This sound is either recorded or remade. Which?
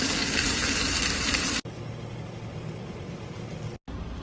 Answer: recorded